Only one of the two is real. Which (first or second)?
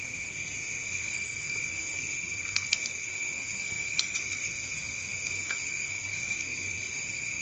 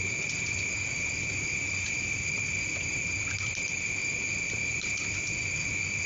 second